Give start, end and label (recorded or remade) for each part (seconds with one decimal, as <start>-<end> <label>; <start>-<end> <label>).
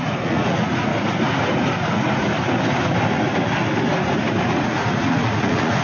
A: 0.0-0.9 remade; 0.9-4.4 recorded; 4.4-5.8 remade